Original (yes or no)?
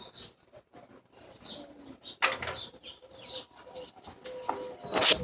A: yes